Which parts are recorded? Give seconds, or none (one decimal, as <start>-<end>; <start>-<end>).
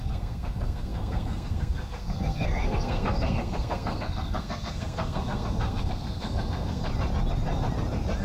6.9-8.2